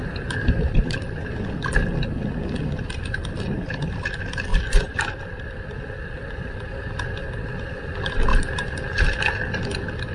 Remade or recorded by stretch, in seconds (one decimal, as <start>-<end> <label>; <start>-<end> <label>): 0.0-1.4 remade; 1.4-4.5 recorded; 4.5-5.2 remade; 5.2-8.3 recorded; 8.3-9.2 remade; 9.2-10.1 recorded